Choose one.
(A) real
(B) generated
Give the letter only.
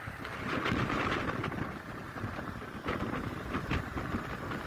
A